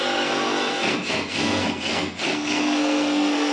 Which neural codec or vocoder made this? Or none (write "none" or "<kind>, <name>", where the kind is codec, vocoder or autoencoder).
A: codec, SNAC